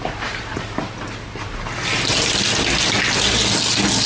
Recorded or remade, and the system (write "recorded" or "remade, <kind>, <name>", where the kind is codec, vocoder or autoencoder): recorded